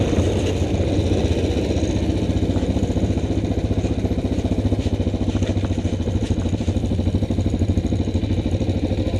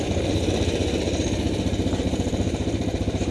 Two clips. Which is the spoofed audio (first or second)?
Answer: second